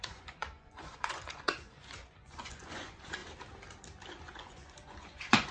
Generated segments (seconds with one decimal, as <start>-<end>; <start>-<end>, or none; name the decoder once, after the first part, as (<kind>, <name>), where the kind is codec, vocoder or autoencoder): 0.0-3.2 (vocoder, Vocos); 4.1-5.5